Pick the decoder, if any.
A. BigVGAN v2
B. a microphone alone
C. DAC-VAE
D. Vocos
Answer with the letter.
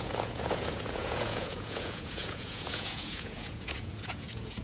D